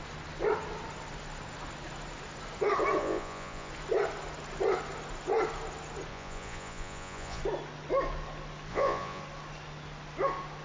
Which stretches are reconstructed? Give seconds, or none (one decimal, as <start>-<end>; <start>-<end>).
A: 3.0-3.7; 6.1-7.4; 8.7-9.2